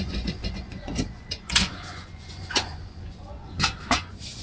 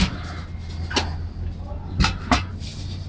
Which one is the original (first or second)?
second